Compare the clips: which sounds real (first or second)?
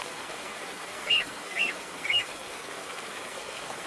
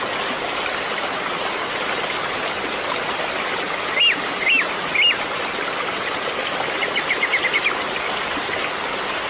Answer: second